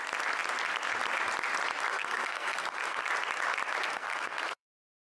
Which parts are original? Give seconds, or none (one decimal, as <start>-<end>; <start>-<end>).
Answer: 0.0-1.9; 3.0-3.9

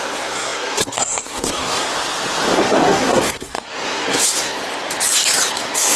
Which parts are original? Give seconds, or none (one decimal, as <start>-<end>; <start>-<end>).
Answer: 1.9-2.6; 4.6-5.5

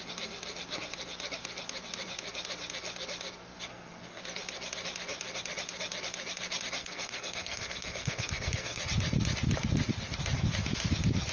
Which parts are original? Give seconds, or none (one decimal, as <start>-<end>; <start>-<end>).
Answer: 0.0-3.7; 4.2-6.8; 8.8-11.3

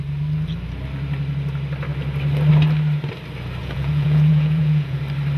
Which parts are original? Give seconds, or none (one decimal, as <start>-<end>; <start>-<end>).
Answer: 0.0-3.6; 5.0-5.4